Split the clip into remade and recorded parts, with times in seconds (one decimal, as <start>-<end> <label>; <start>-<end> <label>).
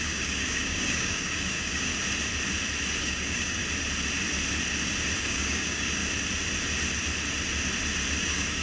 0.0-1.9 remade; 1.9-3.0 recorded; 3.0-3.6 remade; 3.6-5.2 recorded; 5.2-6.0 remade; 6.0-8.2 recorded; 8.2-8.6 remade